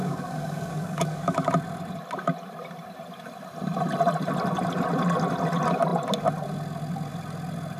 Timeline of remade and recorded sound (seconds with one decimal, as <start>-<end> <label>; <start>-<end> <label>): 0.0-1.5 remade; 1.5-7.8 recorded